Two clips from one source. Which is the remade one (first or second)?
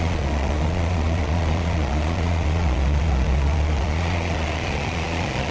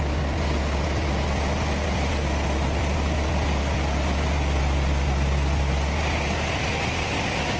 first